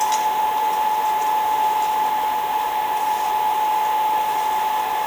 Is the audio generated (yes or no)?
no